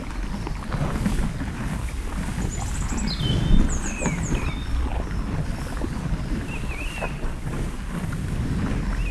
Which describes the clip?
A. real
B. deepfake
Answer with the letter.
A